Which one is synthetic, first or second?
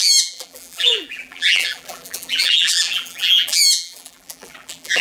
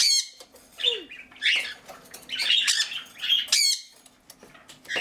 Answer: first